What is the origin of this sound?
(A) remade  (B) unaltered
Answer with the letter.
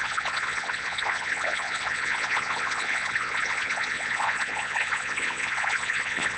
A